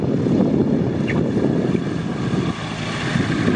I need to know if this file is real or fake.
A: real